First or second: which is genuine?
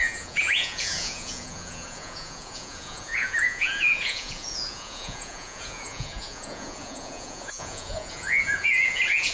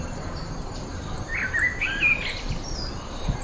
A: second